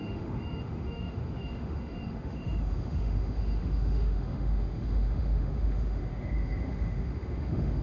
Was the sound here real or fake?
fake